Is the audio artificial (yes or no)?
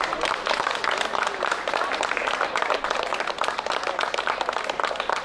no